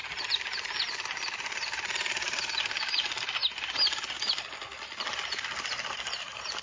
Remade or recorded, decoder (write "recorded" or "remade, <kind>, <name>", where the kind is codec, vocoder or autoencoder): recorded